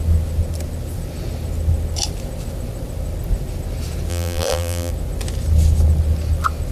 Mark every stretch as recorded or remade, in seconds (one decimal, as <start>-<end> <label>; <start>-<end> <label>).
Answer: 0.0-4.1 recorded; 4.1-4.9 remade; 4.9-6.7 recorded